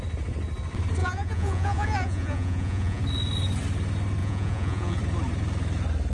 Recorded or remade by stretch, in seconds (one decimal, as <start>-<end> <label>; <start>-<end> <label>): 0.0-1.0 recorded; 1.0-3.0 remade; 3.0-4.2 recorded; 4.2-5.0 remade; 5.0-6.1 recorded